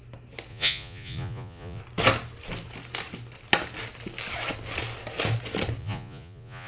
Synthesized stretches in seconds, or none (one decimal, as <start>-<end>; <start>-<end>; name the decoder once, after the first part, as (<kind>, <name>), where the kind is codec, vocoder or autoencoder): 0.5-1.8 (vocoder, Vocos); 5.8-6.7